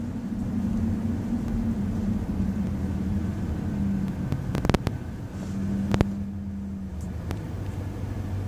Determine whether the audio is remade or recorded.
recorded